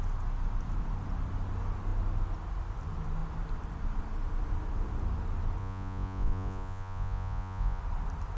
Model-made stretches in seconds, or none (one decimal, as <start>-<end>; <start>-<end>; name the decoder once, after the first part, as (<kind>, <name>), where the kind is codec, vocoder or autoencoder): 5.6-7.8 (vocoder, Vocos)